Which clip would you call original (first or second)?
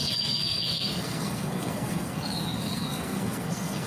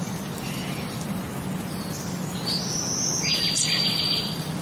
second